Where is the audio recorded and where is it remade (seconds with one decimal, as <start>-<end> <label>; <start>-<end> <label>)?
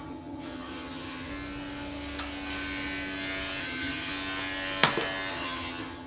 0.0-1.3 remade; 1.3-3.6 recorded; 3.6-4.1 remade; 4.1-5.3 recorded; 5.3-6.1 remade